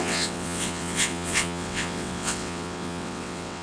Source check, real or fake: fake